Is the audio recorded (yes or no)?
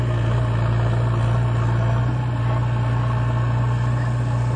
yes